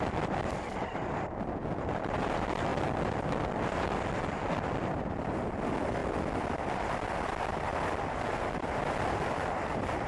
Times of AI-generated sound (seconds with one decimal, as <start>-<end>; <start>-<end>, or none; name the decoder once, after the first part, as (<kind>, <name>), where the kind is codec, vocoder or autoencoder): 0.0-2.7 (vocoder, BigVGAN v2); 4.5-6.0; 6.6-7.7; 8.3-10.1